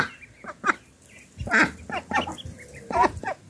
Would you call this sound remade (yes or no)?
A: no